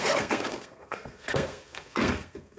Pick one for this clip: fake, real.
fake